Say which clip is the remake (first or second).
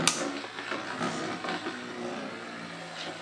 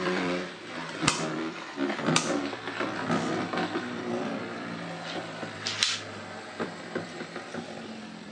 second